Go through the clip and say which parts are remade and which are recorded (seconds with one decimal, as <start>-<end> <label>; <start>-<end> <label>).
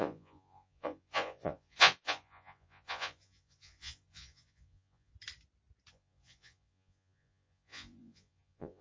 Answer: 0.0-5.1 remade; 5.1-5.9 recorded; 5.9-8.8 remade